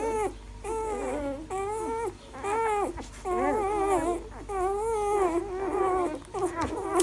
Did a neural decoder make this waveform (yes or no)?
no